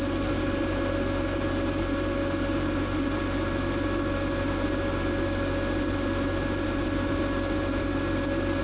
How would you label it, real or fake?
real